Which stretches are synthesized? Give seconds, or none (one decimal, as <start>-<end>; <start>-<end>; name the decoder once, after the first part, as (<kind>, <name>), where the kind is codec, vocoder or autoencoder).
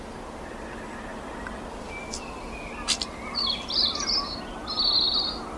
none